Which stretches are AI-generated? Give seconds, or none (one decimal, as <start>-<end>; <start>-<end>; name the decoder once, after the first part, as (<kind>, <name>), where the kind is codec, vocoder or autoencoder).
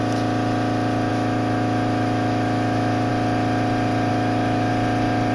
1.1-3.1 (autoencoder, DAC-VAE); 4.1-4.7